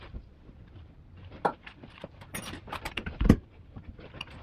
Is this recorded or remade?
remade